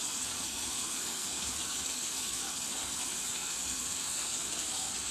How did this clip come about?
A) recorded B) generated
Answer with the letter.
B